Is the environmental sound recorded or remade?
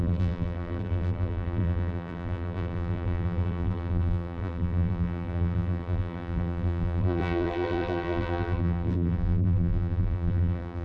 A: remade